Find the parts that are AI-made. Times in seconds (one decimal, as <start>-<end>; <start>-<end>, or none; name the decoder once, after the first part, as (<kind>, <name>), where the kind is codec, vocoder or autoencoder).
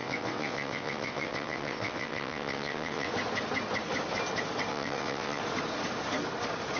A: 0.0-3.1 (vocoder, WaveNeXt); 4.7-5.4